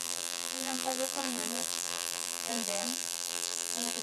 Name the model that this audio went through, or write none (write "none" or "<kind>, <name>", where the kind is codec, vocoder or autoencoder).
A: vocoder, BigVGAN v2